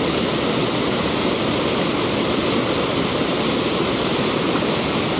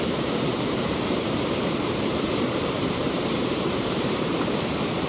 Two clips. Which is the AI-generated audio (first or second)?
second